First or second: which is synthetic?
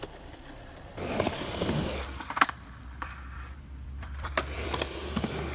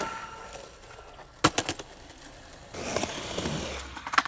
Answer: first